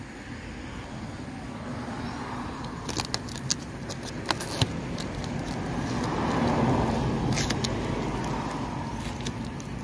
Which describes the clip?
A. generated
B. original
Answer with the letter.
B